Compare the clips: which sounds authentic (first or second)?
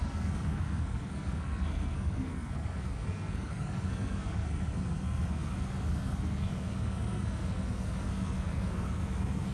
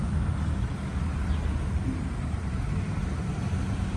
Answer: second